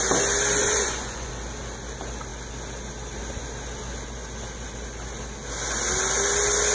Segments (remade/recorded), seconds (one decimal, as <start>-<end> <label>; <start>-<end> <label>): 0.0-0.6 recorded; 0.6-1.3 remade; 1.3-6.7 recorded